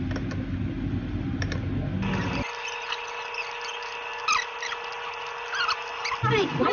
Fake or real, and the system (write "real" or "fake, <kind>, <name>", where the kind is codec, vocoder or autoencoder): real